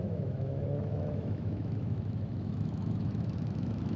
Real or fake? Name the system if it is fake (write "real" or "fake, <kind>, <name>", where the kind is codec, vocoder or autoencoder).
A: fake, autoencoder, DAC-VAE